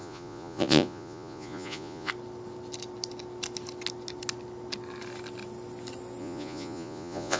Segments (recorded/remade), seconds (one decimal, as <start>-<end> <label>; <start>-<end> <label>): 0.0-2.1 remade; 2.1-6.2 recorded; 6.2-7.4 remade